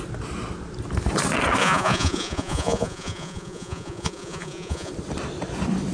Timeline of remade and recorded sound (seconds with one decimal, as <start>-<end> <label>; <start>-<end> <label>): 0.0-1.6 recorded; 1.6-4.9 remade; 4.9-5.9 recorded